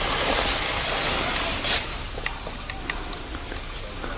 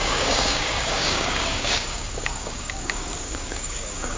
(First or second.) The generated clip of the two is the second